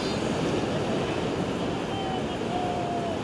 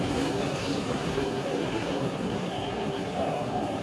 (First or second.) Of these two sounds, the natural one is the first